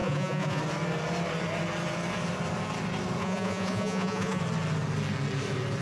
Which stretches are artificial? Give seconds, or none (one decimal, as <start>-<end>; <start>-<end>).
0.0-0.6; 3.2-4.4